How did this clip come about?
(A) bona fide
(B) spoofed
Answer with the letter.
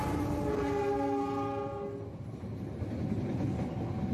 A